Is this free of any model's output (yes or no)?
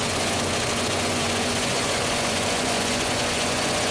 no